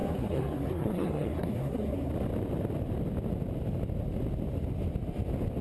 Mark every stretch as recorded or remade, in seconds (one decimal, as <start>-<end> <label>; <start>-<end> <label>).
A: 0.0-2.1 remade; 2.1-5.6 recorded